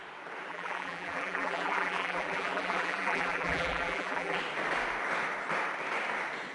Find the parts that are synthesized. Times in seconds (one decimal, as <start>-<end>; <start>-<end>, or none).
0.5-4.4